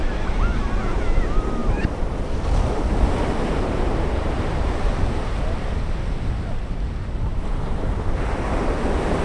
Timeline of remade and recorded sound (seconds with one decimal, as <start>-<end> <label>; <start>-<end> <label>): 0.0-9.2 remade